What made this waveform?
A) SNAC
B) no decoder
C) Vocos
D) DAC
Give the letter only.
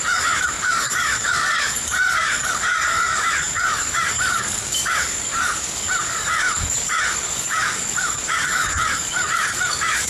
D